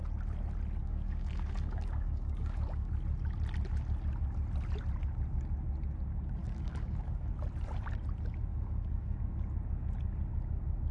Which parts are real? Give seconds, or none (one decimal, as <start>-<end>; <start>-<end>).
0.0-0.8; 2.9-6.4; 7.3-8.5; 9.2-10.9